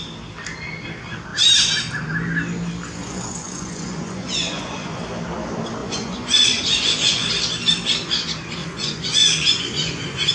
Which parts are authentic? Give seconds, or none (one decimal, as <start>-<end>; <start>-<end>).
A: 0.0-3.0; 5.0-5.8; 7.3-8.6